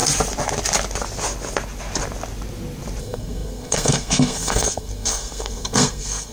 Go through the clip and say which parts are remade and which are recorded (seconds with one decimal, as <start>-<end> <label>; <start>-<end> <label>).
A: 0.0-3.0 recorded; 3.0-6.3 remade